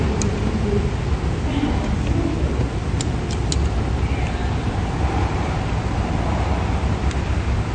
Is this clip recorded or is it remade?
recorded